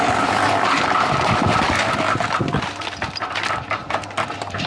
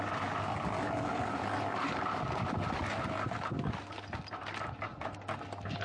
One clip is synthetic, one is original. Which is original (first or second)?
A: second